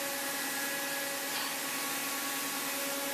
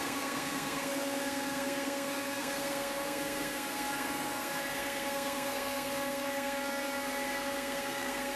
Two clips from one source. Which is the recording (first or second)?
first